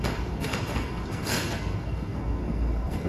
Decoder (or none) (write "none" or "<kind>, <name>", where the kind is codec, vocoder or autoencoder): codec, SNAC